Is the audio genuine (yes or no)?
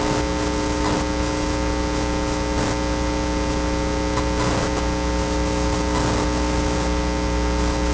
yes